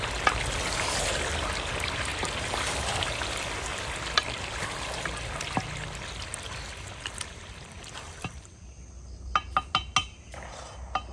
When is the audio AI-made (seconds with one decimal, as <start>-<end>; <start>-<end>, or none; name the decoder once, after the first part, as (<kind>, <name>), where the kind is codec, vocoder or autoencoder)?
none